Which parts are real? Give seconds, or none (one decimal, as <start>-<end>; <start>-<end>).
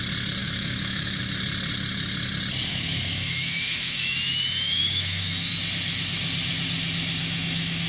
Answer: 0.0-0.4; 1.2-2.7; 5.6-7.2